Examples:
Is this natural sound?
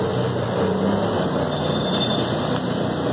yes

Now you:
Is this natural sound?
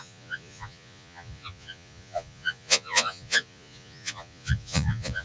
no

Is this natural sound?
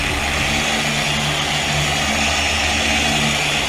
yes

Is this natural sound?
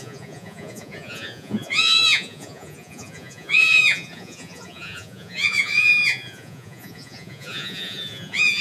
no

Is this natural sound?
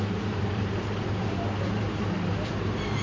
no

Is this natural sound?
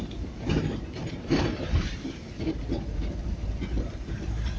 no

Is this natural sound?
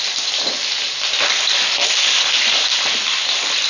yes